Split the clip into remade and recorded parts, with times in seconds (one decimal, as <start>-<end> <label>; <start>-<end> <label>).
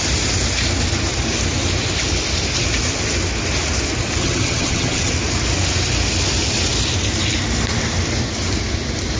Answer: 0.0-4.2 recorded; 4.2-5.1 remade; 5.1-9.2 recorded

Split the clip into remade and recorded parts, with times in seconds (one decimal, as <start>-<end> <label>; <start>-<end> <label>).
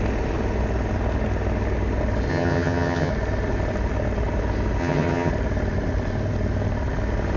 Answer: 0.0-2.3 recorded; 2.3-3.1 remade; 3.1-4.8 recorded; 4.8-5.3 remade; 5.3-7.4 recorded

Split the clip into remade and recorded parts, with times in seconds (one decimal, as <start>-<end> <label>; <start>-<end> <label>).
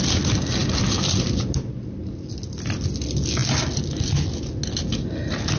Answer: 0.0-5.6 recorded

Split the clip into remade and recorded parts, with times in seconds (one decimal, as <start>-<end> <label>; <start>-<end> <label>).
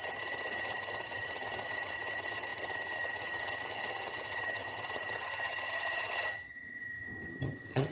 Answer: 0.0-7.9 remade